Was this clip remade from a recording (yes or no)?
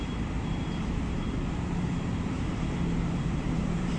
yes